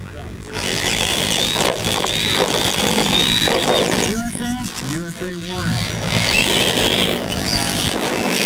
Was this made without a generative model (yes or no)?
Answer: no